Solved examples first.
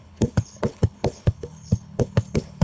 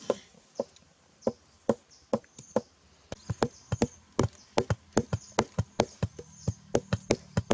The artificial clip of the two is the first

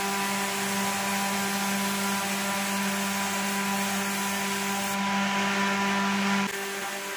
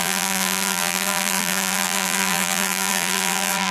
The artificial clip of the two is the second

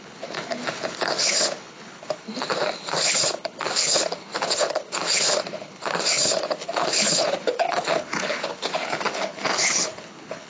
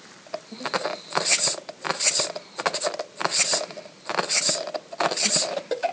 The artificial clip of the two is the first